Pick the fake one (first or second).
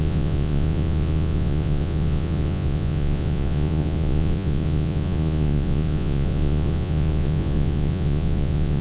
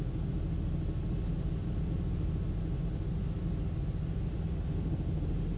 first